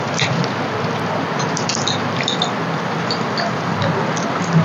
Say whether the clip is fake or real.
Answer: real